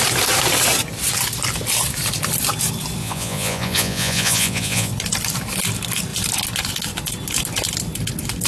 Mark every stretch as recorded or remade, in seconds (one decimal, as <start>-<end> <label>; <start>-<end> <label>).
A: 0.0-3.0 recorded; 3.0-4.9 remade; 4.9-8.5 recorded